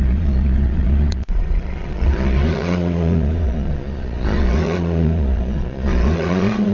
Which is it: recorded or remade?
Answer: remade